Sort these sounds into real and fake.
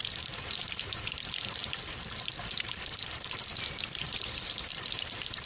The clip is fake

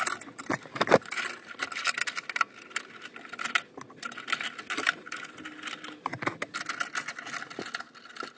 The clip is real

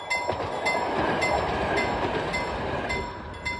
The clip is real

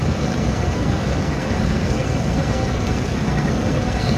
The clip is fake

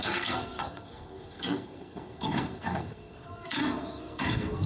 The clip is fake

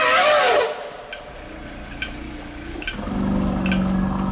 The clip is real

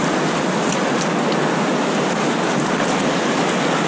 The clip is real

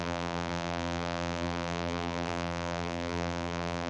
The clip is fake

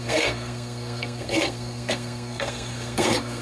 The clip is fake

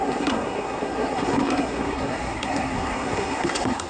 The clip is fake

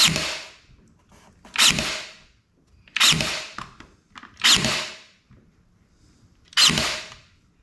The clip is real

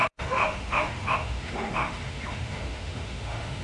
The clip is fake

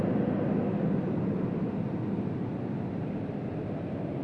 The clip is real